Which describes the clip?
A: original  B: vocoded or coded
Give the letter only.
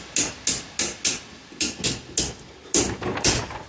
A